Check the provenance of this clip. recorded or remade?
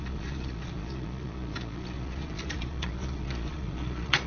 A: remade